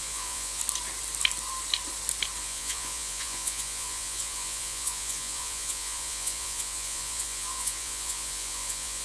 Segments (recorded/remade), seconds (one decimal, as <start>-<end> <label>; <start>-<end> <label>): 0.0-0.6 remade; 0.6-2.4 recorded; 2.4-9.0 remade